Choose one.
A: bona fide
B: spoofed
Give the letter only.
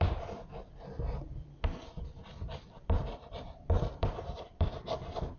B